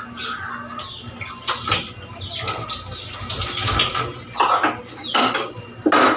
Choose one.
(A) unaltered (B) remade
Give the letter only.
A